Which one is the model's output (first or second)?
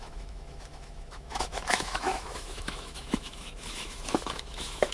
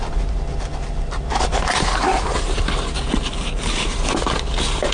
first